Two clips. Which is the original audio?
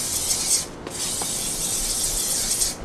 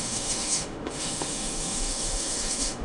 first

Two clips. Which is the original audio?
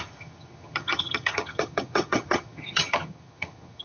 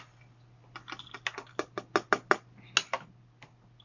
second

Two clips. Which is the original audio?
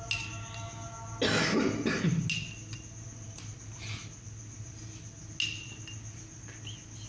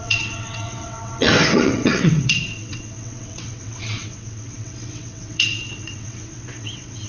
first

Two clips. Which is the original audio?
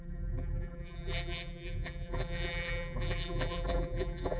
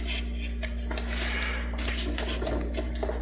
second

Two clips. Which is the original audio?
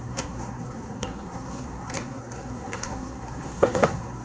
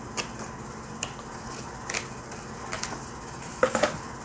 second